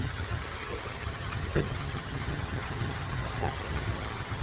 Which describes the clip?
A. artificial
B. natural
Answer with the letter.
A